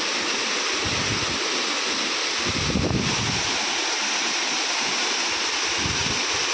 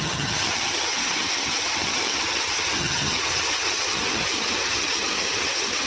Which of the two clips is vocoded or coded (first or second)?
second